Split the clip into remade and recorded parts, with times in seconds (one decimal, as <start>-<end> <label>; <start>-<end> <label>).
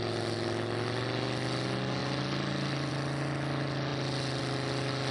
0.0-5.1 recorded